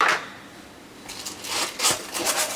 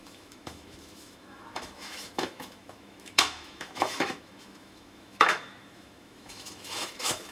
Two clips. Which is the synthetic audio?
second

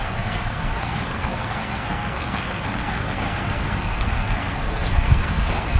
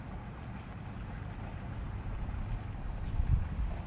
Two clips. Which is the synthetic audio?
first